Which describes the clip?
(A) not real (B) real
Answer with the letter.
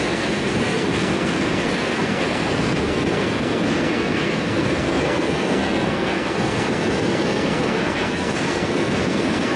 A